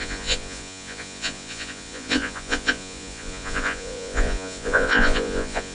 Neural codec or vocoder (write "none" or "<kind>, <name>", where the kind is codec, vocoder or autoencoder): vocoder, Vocos